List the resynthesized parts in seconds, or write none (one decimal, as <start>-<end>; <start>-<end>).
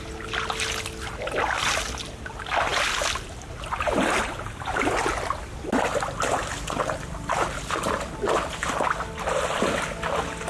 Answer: none